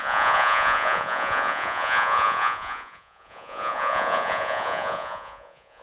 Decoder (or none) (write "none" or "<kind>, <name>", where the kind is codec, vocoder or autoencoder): vocoder, Vocos